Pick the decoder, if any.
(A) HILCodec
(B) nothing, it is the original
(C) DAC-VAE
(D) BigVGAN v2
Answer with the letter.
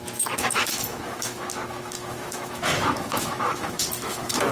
C